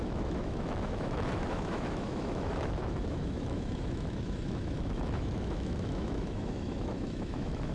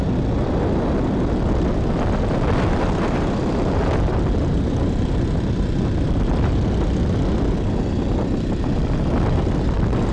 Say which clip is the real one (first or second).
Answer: second